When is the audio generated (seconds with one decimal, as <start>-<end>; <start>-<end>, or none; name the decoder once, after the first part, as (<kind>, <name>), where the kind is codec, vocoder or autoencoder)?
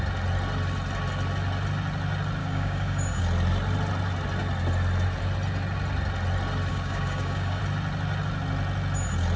2.4-3.2 (codec, DAC); 6.7-7.6